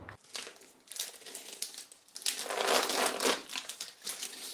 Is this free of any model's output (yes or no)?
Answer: yes